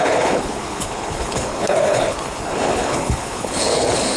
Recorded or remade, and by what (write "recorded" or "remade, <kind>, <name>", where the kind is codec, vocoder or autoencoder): remade, codec, HILCodec